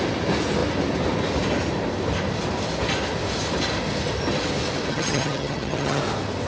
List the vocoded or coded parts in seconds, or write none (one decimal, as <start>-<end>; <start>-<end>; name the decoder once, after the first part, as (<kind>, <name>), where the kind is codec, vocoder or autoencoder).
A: 4.9-6.0 (vocoder, HiFi-GAN)